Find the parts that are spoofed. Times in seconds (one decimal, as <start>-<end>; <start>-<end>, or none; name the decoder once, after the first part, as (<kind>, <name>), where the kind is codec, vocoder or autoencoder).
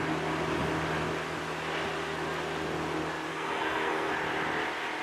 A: 3.3-4.1 (codec, SNAC)